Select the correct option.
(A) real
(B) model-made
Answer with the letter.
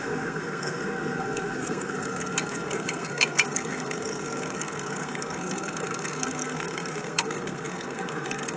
B